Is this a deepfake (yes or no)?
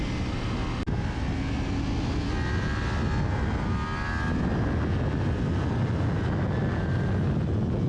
no